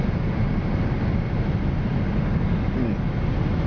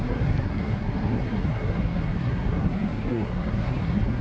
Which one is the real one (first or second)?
first